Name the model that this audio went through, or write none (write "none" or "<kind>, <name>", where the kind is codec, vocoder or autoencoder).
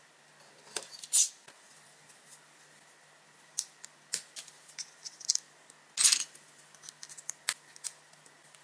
none